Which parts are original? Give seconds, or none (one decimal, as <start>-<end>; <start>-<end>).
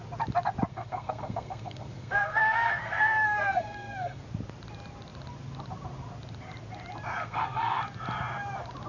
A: 0.0-0.7; 4.2-7.2; 7.8-8.9